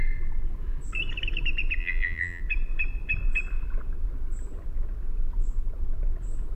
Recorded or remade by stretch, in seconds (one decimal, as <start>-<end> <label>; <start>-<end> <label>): 0.0-1.8 recorded; 1.8-2.4 remade; 2.4-6.6 recorded

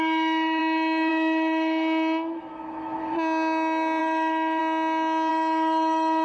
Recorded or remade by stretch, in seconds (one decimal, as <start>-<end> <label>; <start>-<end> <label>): 0.0-3.0 remade; 3.0-4.0 recorded; 4.0-4.6 remade; 4.6-5.3 recorded; 5.3-6.2 remade

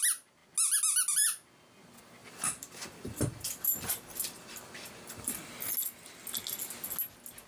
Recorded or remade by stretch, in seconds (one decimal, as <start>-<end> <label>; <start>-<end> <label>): 0.0-2.2 recorded; 2.2-5.5 remade; 5.5-7.5 recorded

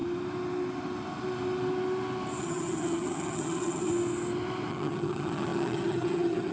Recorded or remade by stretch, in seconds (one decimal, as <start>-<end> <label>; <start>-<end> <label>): 0.0-2.4 recorded; 2.4-3.9 remade; 3.9-4.7 recorded; 4.7-6.5 remade